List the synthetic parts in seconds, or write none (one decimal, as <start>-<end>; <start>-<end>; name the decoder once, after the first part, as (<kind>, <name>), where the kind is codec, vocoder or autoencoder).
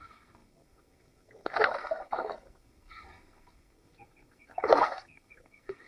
0.0-5.9 (codec, SNAC)